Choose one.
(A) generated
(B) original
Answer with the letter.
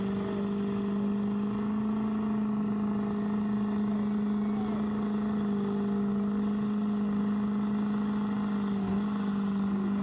B